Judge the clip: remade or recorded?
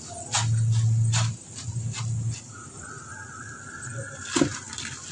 recorded